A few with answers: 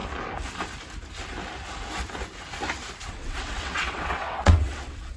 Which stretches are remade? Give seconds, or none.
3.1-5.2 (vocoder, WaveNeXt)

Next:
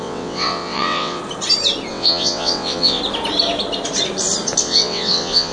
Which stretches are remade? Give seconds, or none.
0.0-1.2 (vocoder, WaveNeXt); 1.9-3.0; 4.6-5.5